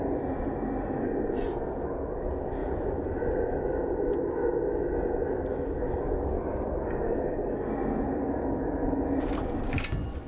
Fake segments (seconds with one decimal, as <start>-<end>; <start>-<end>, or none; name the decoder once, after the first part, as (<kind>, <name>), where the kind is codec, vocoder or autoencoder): 2.6-3.6 (vocoder, BigVGAN v2)